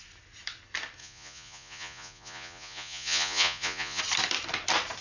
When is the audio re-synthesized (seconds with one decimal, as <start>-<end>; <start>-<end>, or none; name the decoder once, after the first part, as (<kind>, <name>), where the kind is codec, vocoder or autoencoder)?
1.0-4.0 (vocoder, Vocos)